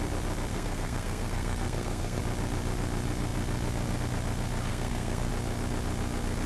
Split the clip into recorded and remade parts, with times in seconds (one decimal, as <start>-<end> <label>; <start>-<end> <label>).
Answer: 0.0-0.5 recorded; 0.5-2.2 remade; 2.2-4.7 recorded; 4.7-5.3 remade; 5.3-6.5 recorded